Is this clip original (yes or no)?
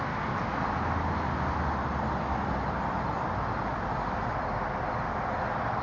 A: yes